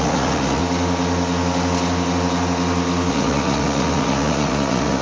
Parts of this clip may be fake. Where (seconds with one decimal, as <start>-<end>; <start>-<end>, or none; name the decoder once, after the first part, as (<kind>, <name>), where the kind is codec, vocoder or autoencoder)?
0.0-0.6 (vocoder, Vocos); 3.1-5.0